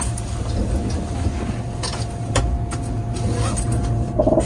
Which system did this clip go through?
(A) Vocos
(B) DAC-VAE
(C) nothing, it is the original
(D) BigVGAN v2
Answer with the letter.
C